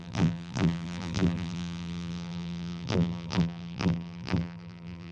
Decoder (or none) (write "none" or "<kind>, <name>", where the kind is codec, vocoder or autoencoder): vocoder, BigVGAN v2